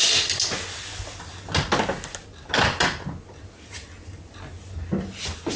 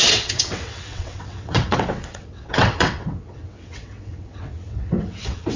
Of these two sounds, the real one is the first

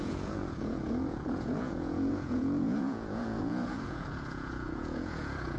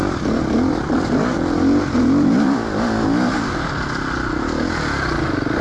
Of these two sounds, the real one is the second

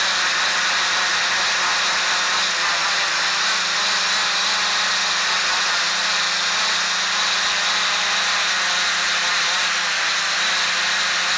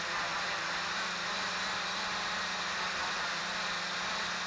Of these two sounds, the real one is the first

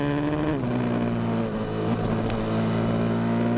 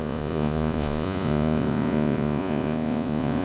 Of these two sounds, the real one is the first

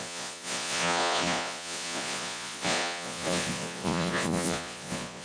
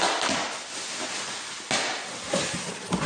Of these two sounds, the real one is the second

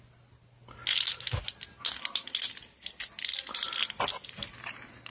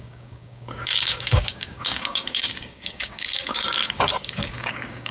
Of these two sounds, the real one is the first